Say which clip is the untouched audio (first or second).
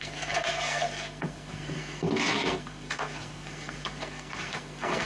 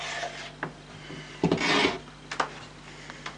second